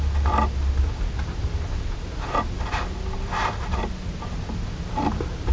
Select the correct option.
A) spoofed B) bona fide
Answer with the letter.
B